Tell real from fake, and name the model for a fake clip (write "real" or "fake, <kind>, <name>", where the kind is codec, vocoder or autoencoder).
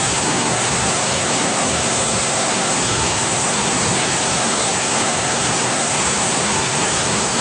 fake, codec, SNAC